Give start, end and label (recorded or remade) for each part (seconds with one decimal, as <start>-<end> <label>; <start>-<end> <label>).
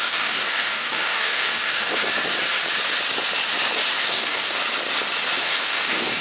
0.0-2.0 remade; 2.0-4.0 recorded; 4.0-4.6 remade; 4.6-5.4 recorded; 5.4-6.2 remade